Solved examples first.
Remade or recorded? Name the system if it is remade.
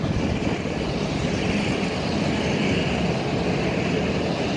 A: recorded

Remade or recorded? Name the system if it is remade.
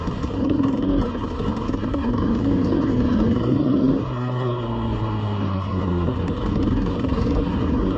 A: remade, codec, SNAC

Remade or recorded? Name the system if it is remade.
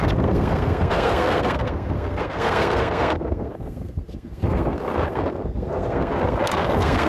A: remade, codec, SNAC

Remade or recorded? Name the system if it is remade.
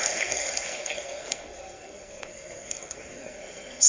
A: remade, codec, SNAC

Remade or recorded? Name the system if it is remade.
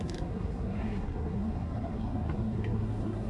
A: remade, codec, SNAC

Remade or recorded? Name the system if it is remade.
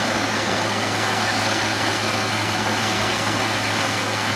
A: remade, codec, SNAC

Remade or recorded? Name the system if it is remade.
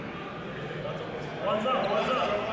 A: recorded